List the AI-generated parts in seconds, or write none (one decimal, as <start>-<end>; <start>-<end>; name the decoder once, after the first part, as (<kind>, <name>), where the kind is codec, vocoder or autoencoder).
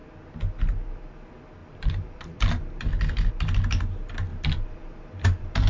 1.6-3.3 (vocoder, BigVGAN v2); 4.3-5.7